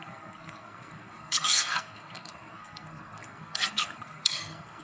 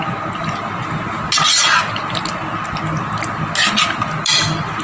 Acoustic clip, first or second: second